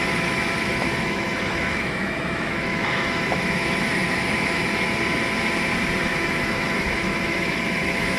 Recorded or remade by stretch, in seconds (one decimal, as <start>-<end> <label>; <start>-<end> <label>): 0.0-4.6 remade; 4.6-6.0 recorded; 6.0-8.2 remade